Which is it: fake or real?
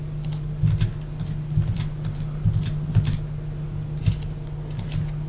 real